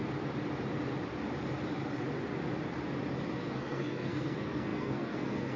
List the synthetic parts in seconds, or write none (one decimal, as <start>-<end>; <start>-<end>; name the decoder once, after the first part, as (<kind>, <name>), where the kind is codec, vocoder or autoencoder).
3.4-5.6 (codec, SNAC)

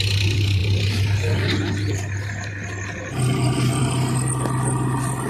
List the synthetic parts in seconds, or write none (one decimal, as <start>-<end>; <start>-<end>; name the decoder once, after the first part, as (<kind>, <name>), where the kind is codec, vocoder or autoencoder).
none